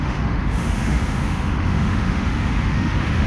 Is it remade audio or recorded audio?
remade